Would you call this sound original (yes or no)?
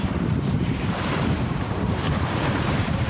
no